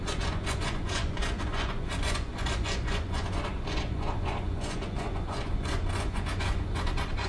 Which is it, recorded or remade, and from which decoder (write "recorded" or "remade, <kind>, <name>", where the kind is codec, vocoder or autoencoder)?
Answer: remade, vocoder, Vocos